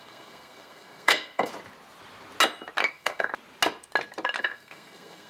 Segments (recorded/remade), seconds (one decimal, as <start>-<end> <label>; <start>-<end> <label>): 0.0-1.5 remade; 1.5-2.9 recorded; 2.9-3.3 remade; 3.3-4.4 recorded; 4.4-5.3 remade